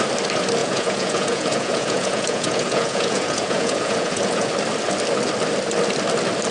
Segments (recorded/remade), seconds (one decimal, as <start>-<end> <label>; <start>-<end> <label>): 0.0-0.6 recorded; 0.6-4.5 remade; 4.5-6.5 recorded